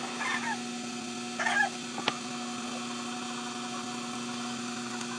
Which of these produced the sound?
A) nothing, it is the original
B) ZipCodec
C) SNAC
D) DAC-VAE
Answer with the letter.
A